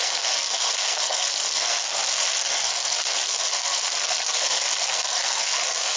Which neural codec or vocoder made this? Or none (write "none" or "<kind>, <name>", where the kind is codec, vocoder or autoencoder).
codec, SNAC